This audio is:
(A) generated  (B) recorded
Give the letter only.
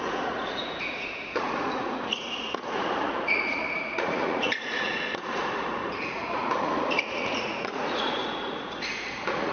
A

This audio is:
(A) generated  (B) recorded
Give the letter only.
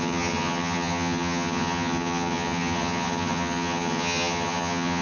A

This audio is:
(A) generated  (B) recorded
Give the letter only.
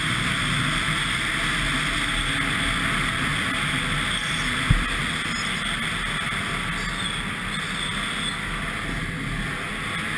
B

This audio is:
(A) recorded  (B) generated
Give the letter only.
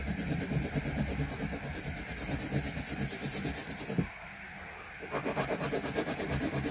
A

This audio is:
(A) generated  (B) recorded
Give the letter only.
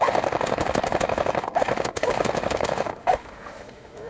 A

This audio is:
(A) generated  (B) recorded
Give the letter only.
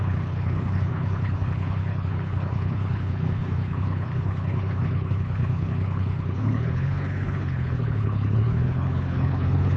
A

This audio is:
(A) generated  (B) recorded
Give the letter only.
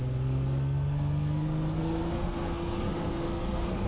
A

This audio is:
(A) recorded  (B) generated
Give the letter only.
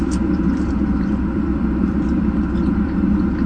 B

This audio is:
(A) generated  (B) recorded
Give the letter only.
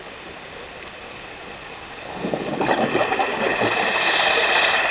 B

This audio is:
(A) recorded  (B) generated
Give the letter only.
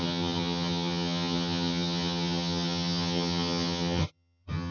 B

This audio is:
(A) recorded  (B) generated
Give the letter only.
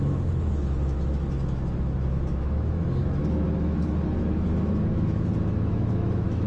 B